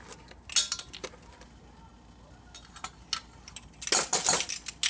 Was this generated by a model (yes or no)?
no